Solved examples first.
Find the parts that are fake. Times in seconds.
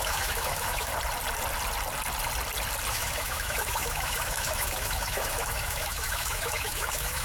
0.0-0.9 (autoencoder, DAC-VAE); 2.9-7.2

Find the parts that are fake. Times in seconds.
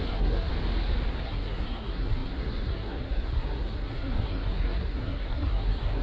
0.0-0.5 (codec, SNAC); 1.1-6.0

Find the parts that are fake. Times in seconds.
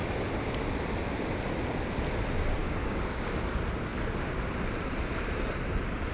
2.6-3.3 (codec, DAC)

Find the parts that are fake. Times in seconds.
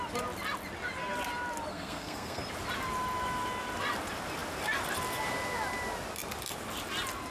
1.7-2.4 (codec, SNAC)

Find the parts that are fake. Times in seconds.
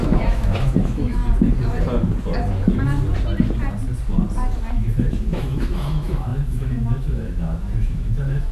0.0-1.2 (autoencoder, DAC-VAE); 4.7-8.5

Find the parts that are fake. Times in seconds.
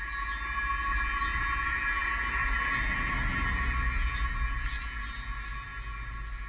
none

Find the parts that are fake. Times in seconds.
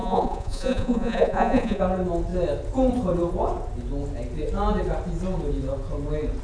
0.0-1.8 (vocoder, Vocos)